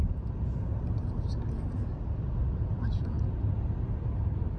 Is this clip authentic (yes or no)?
yes